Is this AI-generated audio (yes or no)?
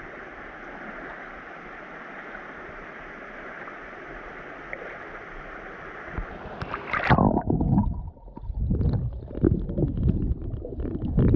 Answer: no